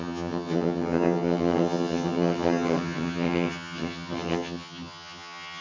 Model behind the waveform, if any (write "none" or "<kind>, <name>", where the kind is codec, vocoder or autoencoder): vocoder, HiFi-GAN